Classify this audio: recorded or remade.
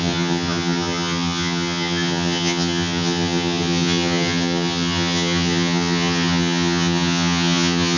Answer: remade